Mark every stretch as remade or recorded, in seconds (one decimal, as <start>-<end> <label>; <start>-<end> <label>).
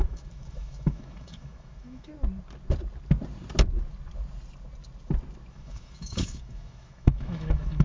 0.0-2.1 remade; 2.1-5.5 recorded; 5.5-7.8 remade